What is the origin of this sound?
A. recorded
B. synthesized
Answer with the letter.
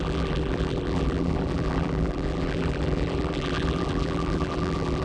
B